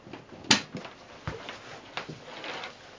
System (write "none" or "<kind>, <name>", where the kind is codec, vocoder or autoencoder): none